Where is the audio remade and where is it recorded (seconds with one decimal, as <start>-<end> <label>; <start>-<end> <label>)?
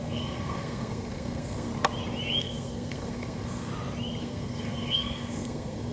0.0-1.7 remade; 1.7-2.4 recorded; 2.4-3.7 remade; 3.7-4.2 recorded; 4.2-5.9 remade